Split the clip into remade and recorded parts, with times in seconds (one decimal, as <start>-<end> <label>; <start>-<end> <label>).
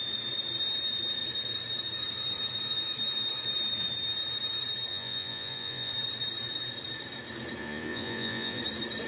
0.0-4.9 recorded; 4.9-5.9 remade; 5.9-7.6 recorded; 7.6-8.6 remade; 8.6-9.1 recorded